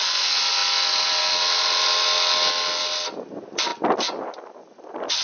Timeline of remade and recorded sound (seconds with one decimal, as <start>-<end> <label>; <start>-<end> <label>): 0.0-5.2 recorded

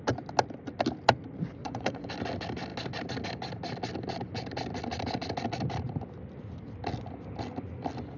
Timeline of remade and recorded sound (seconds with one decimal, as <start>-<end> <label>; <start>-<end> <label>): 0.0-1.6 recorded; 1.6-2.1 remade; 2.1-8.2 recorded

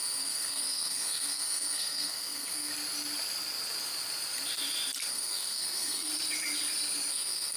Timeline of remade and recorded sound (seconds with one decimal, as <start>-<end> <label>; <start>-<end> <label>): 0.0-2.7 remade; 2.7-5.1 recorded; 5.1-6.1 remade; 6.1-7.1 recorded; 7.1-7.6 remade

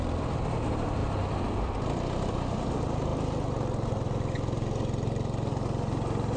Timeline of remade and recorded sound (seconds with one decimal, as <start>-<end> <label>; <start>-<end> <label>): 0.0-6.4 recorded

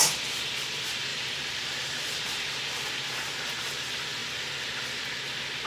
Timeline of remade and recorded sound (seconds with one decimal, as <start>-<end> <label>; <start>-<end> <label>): 0.0-1.1 recorded; 1.1-2.2 remade; 2.2-5.7 recorded

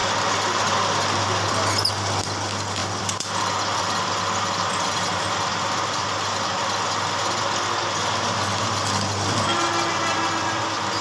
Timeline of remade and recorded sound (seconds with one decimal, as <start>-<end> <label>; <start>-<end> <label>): 0.0-1.9 remade; 1.9-2.8 recorded; 2.8-7.4 remade; 7.4-11.0 recorded

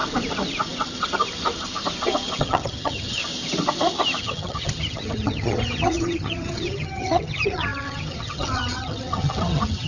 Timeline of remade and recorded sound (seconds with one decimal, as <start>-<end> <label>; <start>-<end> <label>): 0.0-2.4 recorded; 2.4-3.2 remade; 3.2-4.2 recorded; 4.2-9.9 remade